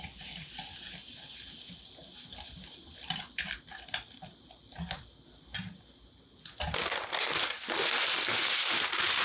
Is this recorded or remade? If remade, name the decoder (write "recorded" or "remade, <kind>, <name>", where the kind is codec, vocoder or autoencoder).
recorded